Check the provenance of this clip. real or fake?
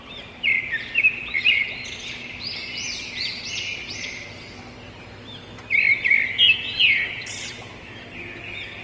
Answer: real